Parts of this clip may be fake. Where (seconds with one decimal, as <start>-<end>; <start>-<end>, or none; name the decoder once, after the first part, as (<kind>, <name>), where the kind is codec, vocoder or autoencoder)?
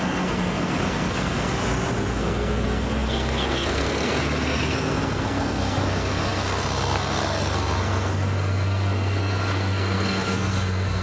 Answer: 0.0-1.6 (codec, SNAC); 2.1-11.0